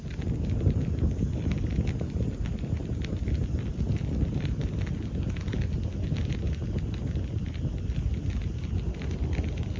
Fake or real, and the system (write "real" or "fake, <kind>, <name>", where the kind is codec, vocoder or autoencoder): real